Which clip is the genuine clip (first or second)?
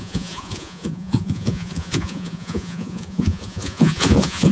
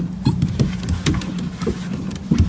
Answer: second